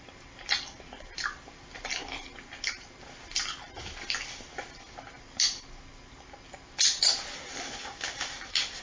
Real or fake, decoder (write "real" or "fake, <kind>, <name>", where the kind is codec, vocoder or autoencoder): real